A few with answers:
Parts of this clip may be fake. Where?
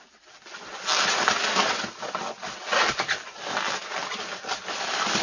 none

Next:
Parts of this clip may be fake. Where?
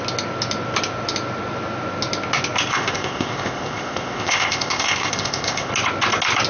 2.7-5.7 (codec, ZipCodec)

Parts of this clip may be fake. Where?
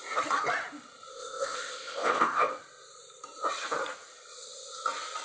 1.1-2.5 (codec, ZipCodec)